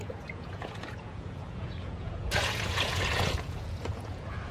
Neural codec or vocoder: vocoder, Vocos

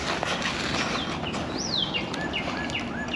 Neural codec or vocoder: none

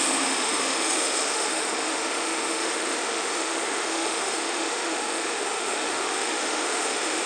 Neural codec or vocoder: autoencoder, DAC-VAE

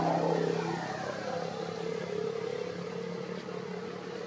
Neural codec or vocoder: none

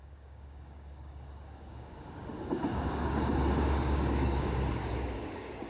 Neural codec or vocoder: codec, DAC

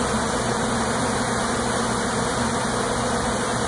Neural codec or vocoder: none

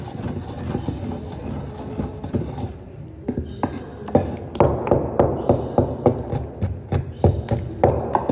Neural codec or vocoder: none